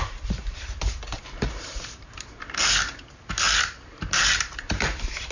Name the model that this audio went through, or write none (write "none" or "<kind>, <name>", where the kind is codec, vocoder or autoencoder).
vocoder, BigVGAN v2